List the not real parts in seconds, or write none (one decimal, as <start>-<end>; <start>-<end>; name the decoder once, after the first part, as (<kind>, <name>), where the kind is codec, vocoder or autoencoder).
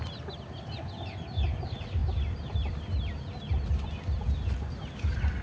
none